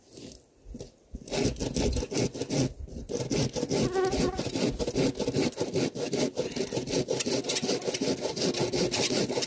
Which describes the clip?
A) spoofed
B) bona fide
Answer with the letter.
B